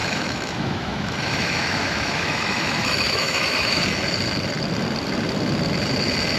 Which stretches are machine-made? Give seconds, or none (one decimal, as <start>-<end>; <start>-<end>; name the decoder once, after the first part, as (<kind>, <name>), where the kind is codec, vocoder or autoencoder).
0.0-3.8 (autoencoder, DAC-VAE)